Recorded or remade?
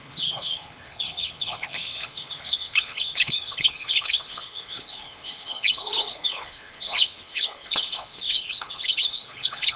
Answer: remade